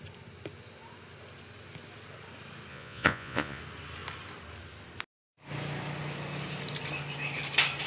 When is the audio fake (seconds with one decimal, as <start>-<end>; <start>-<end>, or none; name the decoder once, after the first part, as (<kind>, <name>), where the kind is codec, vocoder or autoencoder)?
2.7-3.6 (vocoder, Vocos)